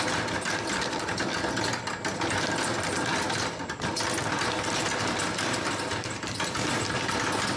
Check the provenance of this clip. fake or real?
real